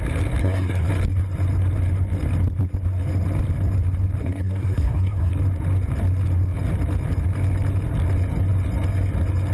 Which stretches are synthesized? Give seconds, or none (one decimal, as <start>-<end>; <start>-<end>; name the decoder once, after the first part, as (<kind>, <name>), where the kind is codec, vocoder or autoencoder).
0.4-0.9 (codec, SNAC); 4.2-5.3